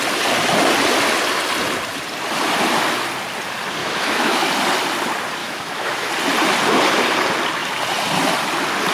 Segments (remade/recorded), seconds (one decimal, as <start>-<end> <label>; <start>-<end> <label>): 0.0-3.8 recorded; 3.8-4.5 remade; 4.5-5.4 recorded; 5.4-6.1 remade; 6.1-8.9 recorded